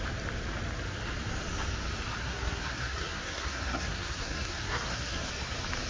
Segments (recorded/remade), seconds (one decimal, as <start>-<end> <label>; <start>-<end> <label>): 0.0-2.2 recorded; 2.2-5.3 remade; 5.3-5.9 recorded